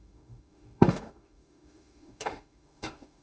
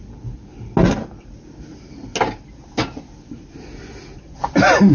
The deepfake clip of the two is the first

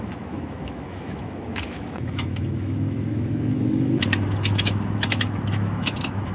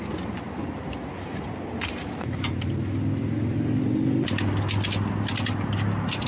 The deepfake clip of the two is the first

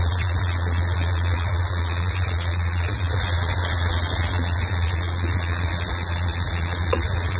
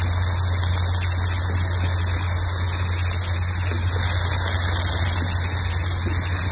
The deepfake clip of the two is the first